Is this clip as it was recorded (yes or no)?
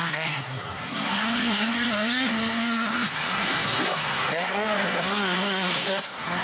no